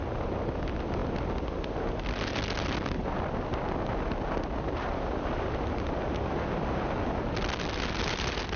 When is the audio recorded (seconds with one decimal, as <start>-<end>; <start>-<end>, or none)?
0.0-8.6